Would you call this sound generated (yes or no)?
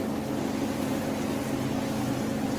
no